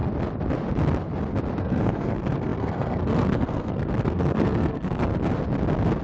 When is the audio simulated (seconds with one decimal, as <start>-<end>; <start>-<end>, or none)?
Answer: 1.6-5.1